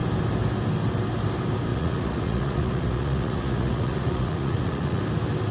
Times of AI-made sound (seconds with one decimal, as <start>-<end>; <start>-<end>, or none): 1.7-5.0